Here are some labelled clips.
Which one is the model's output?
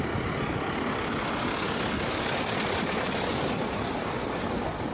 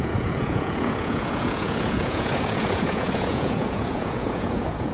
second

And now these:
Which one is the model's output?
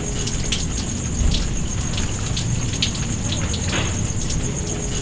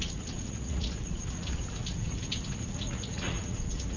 second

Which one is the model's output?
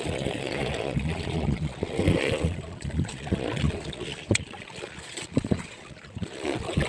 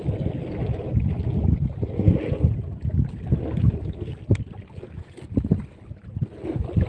first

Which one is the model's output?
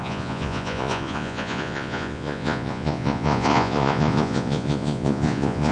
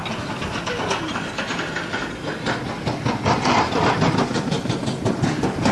first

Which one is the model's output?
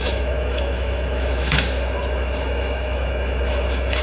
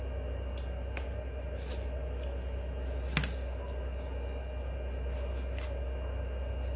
first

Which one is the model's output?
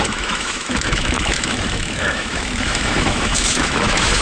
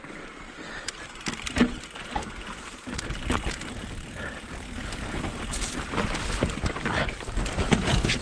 first